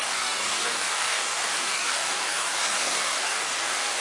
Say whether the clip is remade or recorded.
remade